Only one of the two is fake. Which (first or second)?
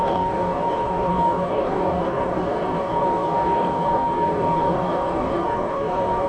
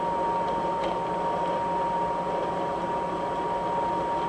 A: first